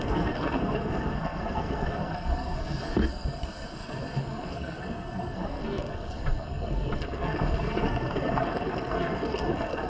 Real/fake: fake